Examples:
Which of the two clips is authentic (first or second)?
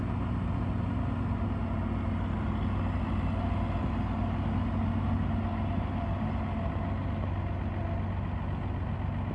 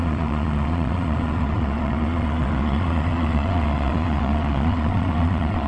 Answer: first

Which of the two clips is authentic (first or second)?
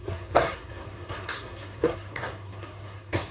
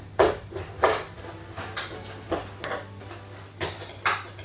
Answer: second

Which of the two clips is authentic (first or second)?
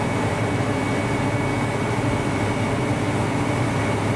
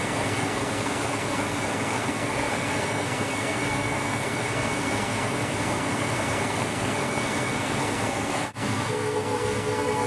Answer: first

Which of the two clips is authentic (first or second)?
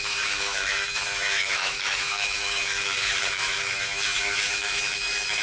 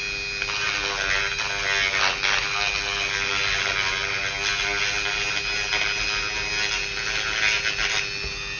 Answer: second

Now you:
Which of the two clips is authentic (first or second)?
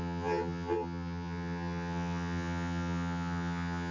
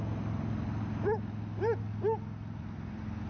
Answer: second